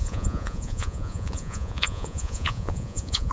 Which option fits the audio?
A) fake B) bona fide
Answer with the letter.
A